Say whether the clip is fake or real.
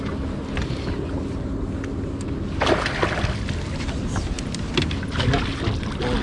real